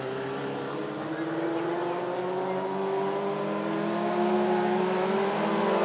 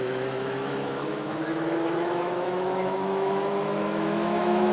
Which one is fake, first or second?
second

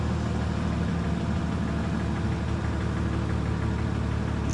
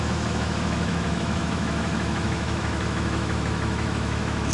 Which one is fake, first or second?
second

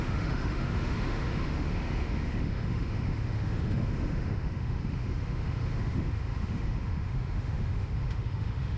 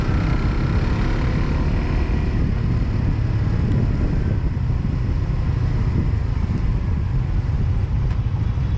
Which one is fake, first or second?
first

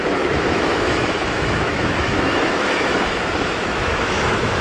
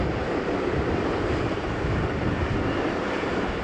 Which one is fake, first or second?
first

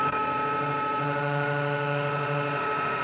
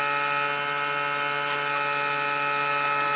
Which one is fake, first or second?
first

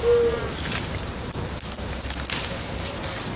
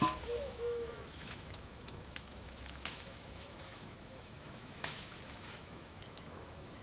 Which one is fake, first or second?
second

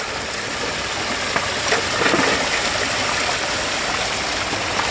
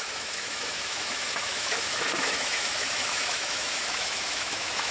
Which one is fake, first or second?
second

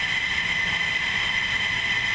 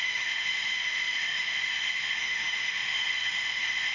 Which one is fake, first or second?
second